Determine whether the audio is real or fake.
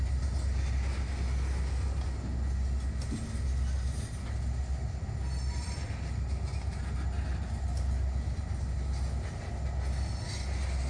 real